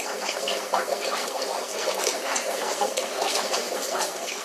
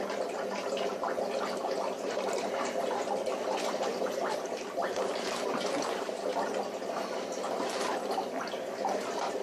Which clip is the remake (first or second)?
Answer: first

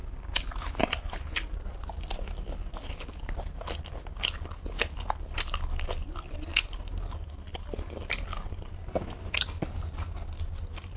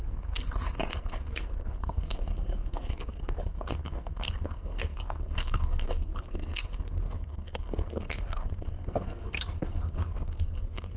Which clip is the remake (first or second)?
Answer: second